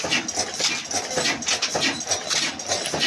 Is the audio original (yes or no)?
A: yes